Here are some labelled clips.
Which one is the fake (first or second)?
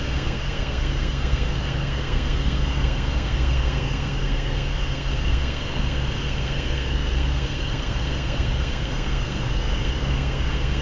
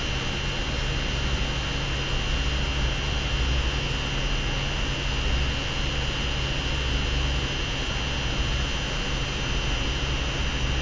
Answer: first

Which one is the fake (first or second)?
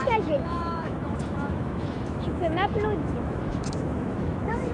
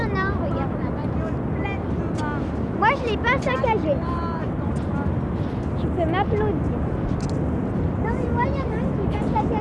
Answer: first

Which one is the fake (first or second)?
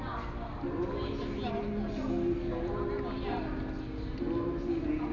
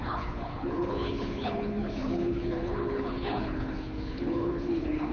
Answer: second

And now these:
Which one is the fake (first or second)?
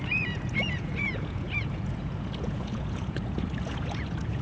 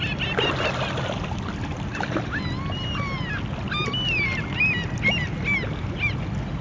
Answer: first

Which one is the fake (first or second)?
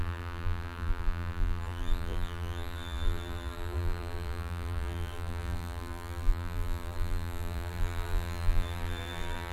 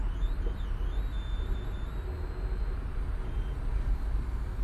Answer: first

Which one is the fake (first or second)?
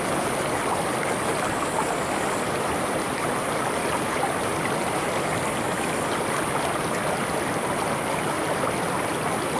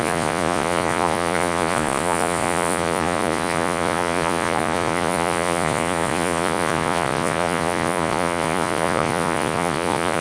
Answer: second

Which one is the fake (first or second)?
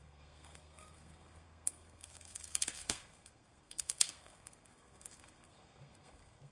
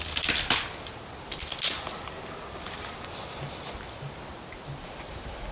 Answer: first